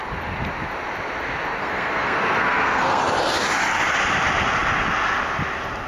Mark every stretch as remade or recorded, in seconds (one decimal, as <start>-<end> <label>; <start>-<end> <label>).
0.0-1.6 recorded; 1.6-3.0 remade; 3.0-5.9 recorded